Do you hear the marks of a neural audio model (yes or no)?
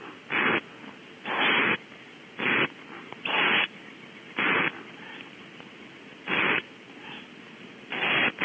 no